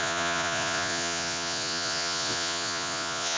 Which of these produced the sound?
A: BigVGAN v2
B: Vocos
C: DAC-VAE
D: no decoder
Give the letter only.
B